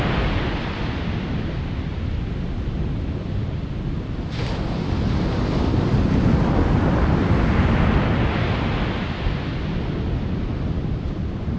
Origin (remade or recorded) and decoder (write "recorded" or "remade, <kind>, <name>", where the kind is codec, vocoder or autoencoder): recorded